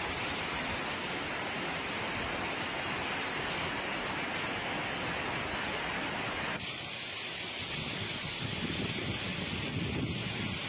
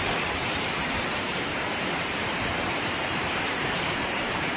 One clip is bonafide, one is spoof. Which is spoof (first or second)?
second